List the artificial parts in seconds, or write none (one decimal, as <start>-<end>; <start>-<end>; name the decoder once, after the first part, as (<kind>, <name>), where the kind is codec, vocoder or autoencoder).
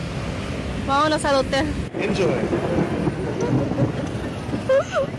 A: none